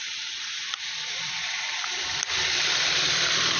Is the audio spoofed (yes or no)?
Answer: yes